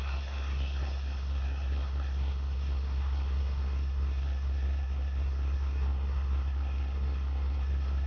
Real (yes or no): no